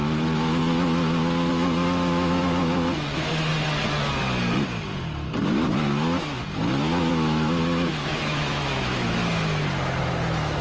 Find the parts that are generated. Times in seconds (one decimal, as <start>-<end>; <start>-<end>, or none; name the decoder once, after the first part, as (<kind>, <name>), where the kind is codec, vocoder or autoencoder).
0.0-0.6 (autoencoder, DAC-VAE); 1.5-3.5; 7.1-9.2; 10.0-10.6